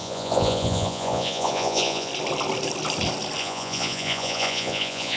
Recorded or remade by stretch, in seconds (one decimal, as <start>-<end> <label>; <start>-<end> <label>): 0.0-2.1 remade; 2.1-3.4 recorded; 3.4-5.2 remade